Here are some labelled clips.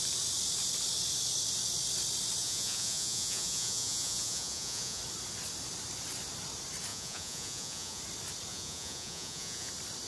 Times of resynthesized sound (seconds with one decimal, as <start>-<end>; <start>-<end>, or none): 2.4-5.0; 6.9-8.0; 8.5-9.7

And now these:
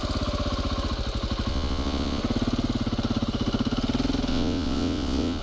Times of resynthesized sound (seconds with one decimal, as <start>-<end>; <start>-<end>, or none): 1.5-2.2; 4.3-5.4

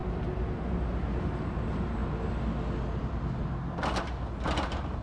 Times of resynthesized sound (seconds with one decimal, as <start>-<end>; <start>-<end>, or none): none

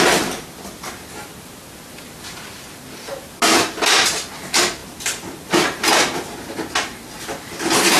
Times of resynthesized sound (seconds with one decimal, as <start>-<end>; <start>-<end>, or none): none

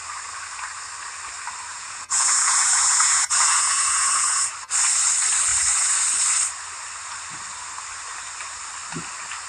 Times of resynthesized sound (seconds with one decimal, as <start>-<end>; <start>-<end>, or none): 1.7-4.5

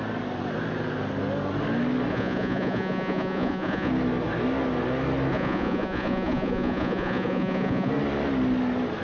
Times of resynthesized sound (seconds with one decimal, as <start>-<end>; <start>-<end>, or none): 2.1-3.9; 5.3-7.9